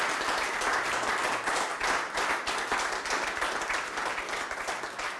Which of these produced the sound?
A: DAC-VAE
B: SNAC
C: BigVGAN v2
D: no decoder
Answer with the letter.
D